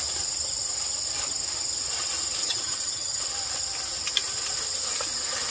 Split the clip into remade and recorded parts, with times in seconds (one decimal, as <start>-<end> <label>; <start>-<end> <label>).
0.0-2.4 recorded; 2.4-3.2 remade; 3.2-5.5 recorded